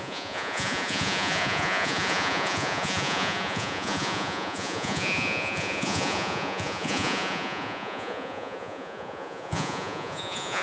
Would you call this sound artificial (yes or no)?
yes